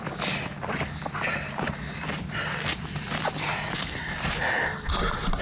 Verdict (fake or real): real